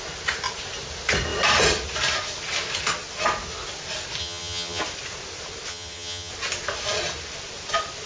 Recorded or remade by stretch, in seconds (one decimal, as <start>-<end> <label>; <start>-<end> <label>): 0.0-4.2 recorded; 4.2-4.8 remade; 4.8-5.7 recorded; 5.7-6.3 remade; 6.3-8.1 recorded